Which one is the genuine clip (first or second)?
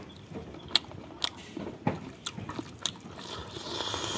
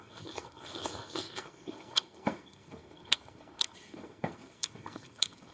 first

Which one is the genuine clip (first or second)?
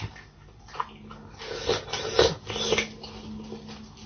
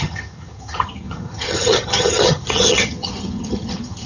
first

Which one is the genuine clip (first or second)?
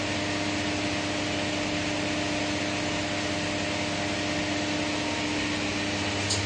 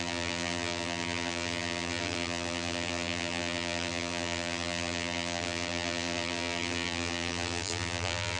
first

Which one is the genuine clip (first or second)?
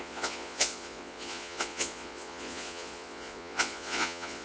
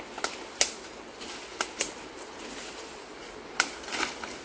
second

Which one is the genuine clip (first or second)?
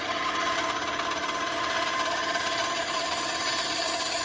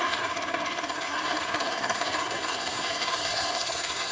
first